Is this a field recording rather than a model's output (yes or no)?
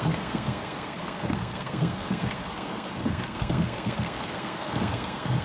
no